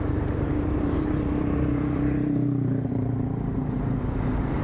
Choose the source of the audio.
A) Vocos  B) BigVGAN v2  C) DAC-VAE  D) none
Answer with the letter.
B